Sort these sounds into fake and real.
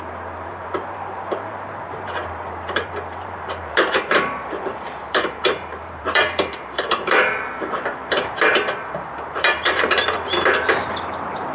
fake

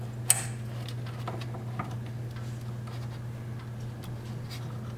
real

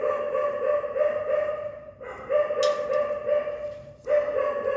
real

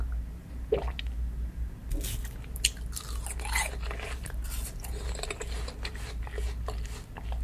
real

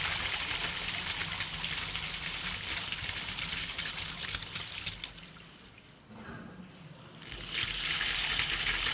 real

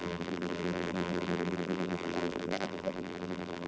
fake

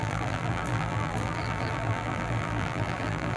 fake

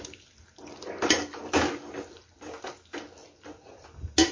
real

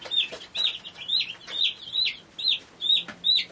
real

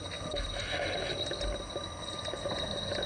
real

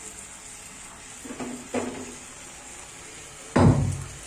real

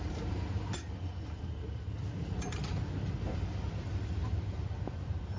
fake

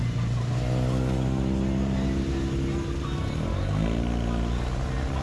real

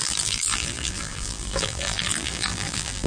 fake